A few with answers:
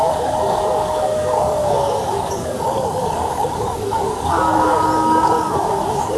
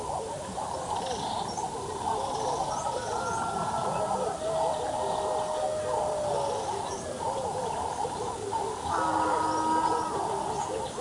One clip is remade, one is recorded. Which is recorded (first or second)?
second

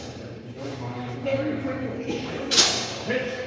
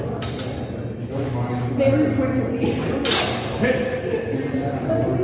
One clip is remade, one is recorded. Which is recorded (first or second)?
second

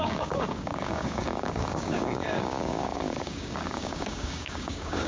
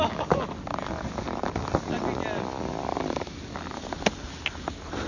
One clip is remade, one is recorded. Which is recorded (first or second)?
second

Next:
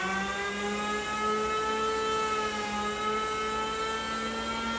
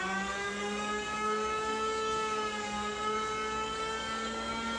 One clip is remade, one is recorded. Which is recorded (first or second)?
first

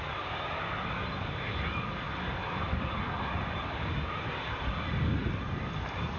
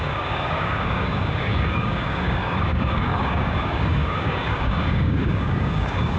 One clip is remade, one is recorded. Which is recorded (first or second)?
first